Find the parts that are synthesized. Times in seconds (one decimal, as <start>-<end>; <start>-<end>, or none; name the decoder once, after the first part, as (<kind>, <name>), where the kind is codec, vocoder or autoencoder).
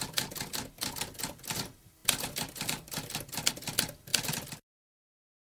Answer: 2.0-3.5 (vocoder, BigVGAN v2); 4.1-5.6